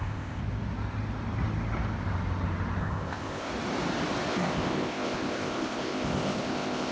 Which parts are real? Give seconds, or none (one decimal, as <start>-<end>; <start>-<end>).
0.4-2.8; 3.5-4.3